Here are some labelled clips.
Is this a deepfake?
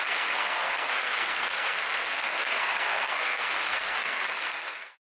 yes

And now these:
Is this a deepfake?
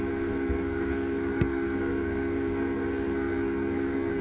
yes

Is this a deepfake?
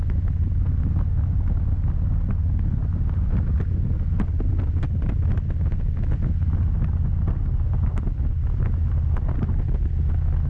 no